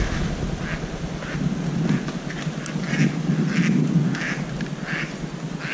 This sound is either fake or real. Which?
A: real